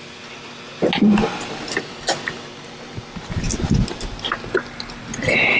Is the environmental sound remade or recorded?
recorded